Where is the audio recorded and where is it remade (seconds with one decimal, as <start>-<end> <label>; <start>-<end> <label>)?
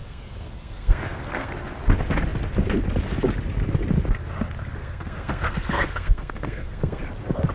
0.0-1.5 remade; 1.5-4.8 recorded; 4.8-7.0 remade; 7.0-7.5 recorded